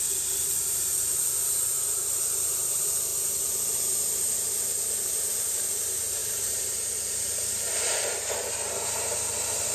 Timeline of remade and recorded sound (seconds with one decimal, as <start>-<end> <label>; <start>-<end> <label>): 0.0-9.7 remade